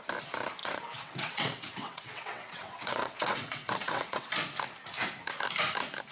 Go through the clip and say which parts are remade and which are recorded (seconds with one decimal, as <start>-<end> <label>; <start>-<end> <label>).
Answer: 0.0-0.6 recorded; 0.6-4.3 remade; 4.3-6.1 recorded